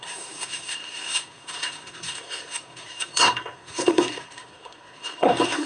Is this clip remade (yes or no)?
yes